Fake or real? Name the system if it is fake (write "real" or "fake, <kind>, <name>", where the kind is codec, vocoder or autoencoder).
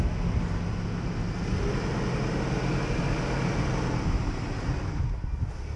real